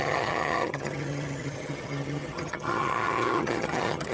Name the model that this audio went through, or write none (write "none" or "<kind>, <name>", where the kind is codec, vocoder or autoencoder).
vocoder, HiFi-GAN